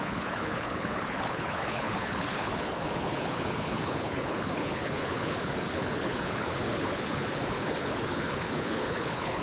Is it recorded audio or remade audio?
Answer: remade